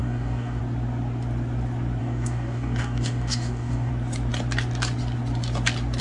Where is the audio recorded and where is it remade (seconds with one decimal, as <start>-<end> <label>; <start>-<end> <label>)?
0.0-0.6 remade; 0.6-2.0 recorded; 2.0-3.9 remade; 3.9-6.0 recorded